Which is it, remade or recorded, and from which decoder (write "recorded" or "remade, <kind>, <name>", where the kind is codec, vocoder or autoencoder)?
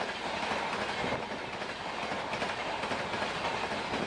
recorded